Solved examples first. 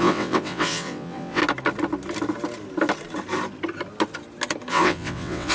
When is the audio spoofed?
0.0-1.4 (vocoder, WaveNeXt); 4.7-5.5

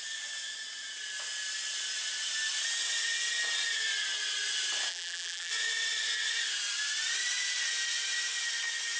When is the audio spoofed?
4.9-5.5 (vocoder, BigVGAN v2)

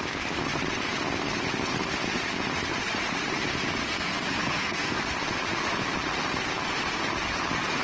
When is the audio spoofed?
3.8-5.0 (codec, SNAC)

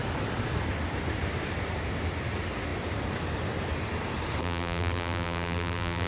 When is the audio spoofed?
4.4-6.1 (vocoder, BigVGAN v2)

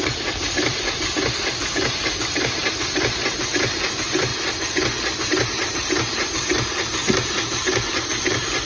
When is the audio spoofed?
0.0-4.3 (vocoder, BigVGAN v2); 5.3-8.7

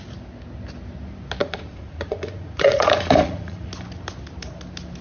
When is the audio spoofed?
1.4-3.7 (vocoder, Vocos)